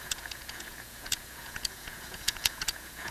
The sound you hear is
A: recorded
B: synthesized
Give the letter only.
B